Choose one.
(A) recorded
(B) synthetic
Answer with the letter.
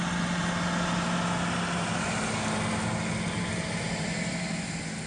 A